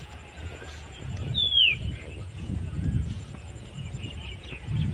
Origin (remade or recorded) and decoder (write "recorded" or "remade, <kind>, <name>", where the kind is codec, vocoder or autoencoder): remade, vocoder, Vocos